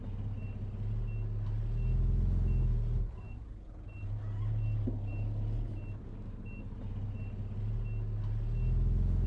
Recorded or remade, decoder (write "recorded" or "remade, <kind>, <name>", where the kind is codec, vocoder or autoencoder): recorded